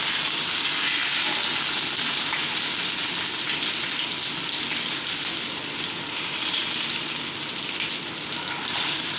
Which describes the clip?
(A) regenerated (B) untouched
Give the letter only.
B